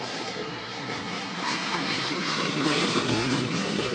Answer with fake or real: fake